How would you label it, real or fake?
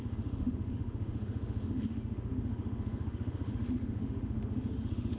fake